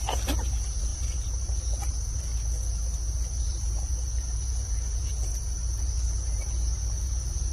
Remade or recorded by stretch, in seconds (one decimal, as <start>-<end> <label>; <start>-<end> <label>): 0.0-2.3 remade; 2.3-3.1 recorded; 3.1-7.5 remade